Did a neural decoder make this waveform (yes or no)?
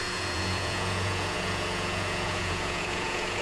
yes